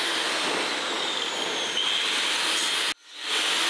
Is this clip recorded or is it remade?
recorded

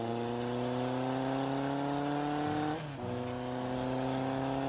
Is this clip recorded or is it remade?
recorded